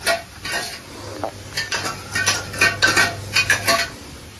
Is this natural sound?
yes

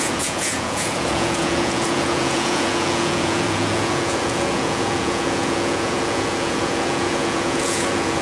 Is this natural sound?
no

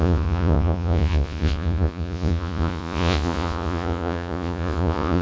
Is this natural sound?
no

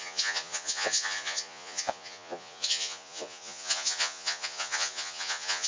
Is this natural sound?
no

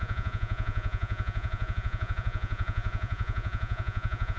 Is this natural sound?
no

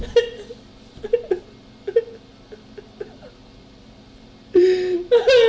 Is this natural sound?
yes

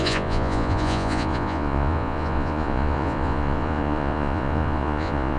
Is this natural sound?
no